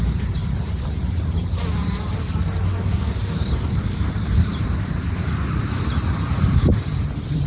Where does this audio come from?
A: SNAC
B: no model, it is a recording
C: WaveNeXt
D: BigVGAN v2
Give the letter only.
D